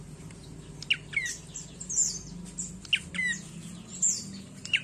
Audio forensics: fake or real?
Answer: real